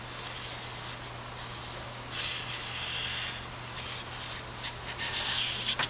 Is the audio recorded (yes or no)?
yes